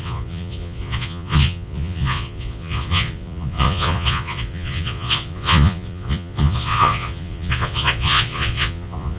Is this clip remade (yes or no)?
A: yes